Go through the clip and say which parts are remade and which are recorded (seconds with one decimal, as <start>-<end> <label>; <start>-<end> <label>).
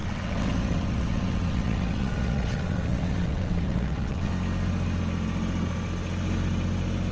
0.0-4.3 remade; 4.3-7.1 recorded